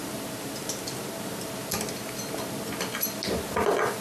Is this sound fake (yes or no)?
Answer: no